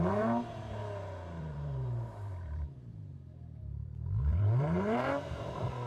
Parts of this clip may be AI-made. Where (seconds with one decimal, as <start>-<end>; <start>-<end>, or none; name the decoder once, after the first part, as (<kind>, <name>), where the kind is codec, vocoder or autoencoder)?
0.0-0.8 (vocoder, BigVGAN v2); 1.4-5.9